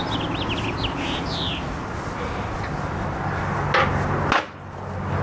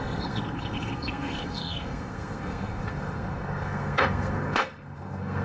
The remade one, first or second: second